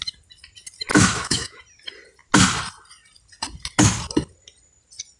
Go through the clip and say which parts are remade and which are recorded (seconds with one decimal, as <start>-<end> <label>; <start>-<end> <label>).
0.0-0.9 recorded; 0.9-1.6 remade; 1.6-5.2 recorded